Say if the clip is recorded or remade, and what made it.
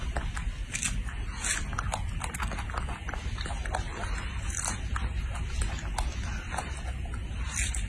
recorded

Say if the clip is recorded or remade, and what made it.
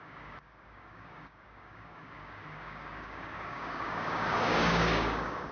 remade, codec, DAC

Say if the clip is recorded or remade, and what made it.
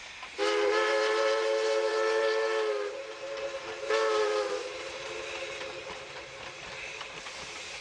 remade, vocoder, BigVGAN v2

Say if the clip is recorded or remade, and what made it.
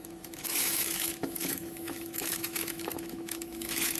remade, autoencoder, DAC-VAE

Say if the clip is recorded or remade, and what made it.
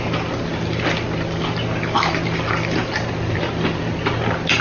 recorded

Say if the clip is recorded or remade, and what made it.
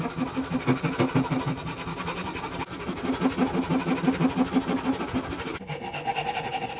recorded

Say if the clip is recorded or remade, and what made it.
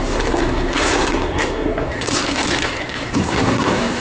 remade, codec, SNAC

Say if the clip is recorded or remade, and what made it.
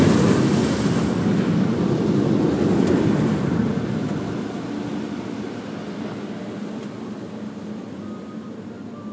recorded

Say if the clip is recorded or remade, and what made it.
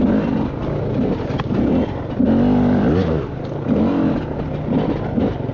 recorded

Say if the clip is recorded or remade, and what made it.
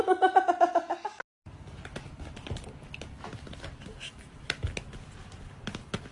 recorded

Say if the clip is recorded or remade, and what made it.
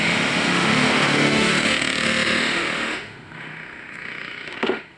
remade, autoencoder, DAC-VAE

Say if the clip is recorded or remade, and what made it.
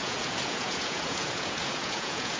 remade, vocoder, Vocos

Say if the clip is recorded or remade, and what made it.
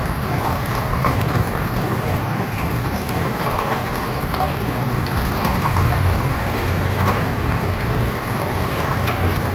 remade, codec, DAC